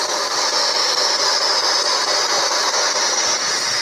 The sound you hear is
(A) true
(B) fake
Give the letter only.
A